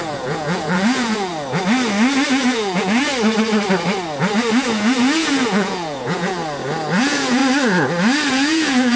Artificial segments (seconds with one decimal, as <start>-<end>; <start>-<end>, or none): 0.0-1.3; 2.3-3.1; 4.5-6.4; 7.0-7.4; 8.3-9.0